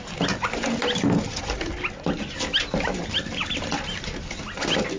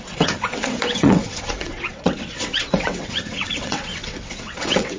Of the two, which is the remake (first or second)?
second